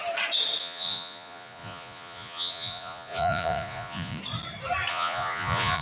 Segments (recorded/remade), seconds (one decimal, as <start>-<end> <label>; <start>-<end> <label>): 0.0-0.6 recorded; 0.6-4.2 remade; 4.2-4.9 recorded; 4.9-5.8 remade

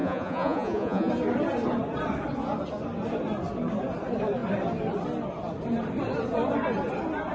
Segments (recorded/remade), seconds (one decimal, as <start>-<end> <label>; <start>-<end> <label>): 0.0-1.1 remade; 1.1-7.3 recorded

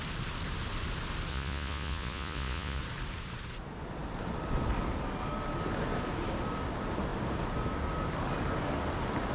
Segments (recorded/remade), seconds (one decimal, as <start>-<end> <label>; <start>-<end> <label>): 0.0-1.3 recorded; 1.3-2.8 remade; 2.8-9.3 recorded

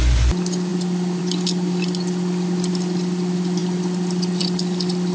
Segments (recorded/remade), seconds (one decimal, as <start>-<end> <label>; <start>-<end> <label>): 0.0-5.1 recorded

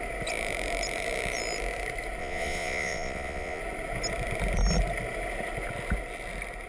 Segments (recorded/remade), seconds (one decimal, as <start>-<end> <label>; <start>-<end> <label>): 0.0-2.2 recorded; 2.2-3.6 remade; 3.6-6.7 recorded

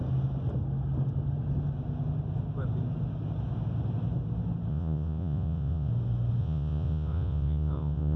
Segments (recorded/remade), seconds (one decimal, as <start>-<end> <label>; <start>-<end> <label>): 0.0-4.7 recorded; 4.7-5.9 remade; 5.9-6.4 recorded; 6.4-8.2 remade

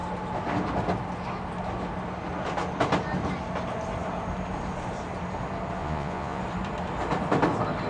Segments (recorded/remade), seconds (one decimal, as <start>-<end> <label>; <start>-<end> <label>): 0.0-5.8 recorded; 5.8-6.4 remade; 6.4-7.9 recorded